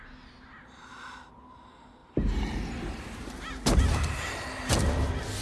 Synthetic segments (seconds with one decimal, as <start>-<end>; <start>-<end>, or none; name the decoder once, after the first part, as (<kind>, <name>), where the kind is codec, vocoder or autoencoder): 2.0-4.7 (vocoder, BigVGAN v2)